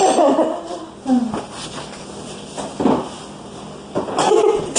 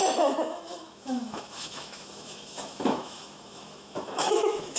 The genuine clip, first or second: first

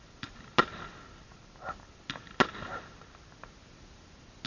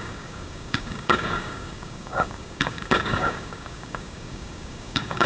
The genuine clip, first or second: first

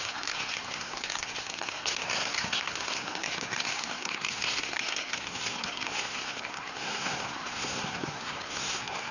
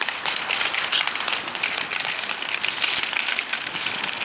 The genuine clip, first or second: second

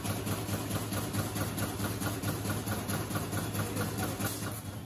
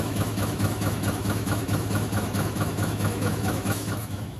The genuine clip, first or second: first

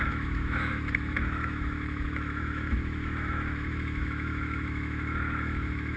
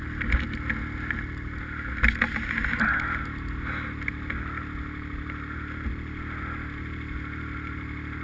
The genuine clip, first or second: second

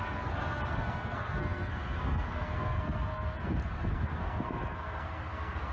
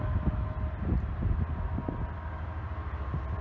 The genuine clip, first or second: second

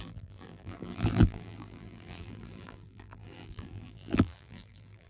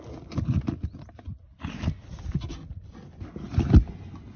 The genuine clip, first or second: second